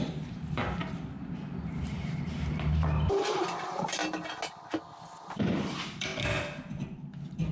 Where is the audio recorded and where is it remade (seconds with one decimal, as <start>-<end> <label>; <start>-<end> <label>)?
0.0-0.8 remade; 0.8-1.8 recorded; 1.8-4.0 remade; 4.0-5.2 recorded; 5.2-6.1 remade; 6.1-7.5 recorded